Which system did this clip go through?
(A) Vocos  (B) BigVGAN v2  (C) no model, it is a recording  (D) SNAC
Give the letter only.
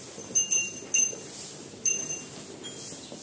C